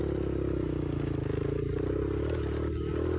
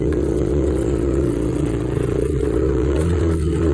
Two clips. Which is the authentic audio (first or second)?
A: first